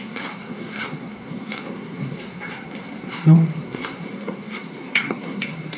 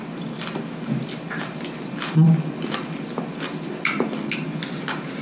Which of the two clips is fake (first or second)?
first